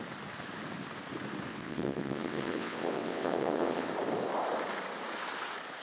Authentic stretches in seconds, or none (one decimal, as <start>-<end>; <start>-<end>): 0.0-1.5; 3.9-5.8